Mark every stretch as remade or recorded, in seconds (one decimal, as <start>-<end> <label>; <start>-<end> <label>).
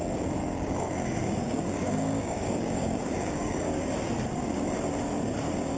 0.0-0.4 recorded; 0.4-0.9 remade; 0.9-1.4 recorded; 1.4-3.8 remade; 3.8-5.8 recorded